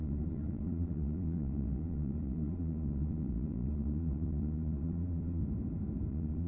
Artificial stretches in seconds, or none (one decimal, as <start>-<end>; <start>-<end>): 0.0-5.4; 6.1-6.5